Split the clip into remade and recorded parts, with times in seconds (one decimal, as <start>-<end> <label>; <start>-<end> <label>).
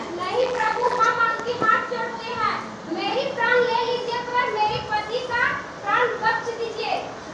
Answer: 0.0-0.4 recorded; 0.4-1.0 remade; 1.0-7.3 recorded